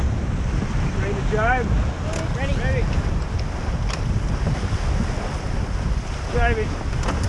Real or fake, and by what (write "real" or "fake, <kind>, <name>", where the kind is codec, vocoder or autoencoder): real